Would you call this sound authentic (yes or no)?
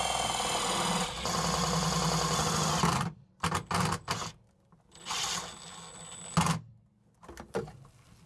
yes